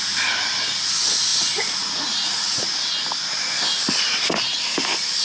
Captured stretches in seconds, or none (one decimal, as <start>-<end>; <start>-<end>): 0.0-1.3; 2.5-5.2